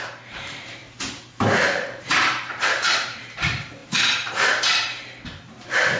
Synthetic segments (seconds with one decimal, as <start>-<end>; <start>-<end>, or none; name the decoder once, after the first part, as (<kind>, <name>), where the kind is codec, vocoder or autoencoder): 0.0-0.8 (vocoder, BigVGAN v2); 2.0-6.0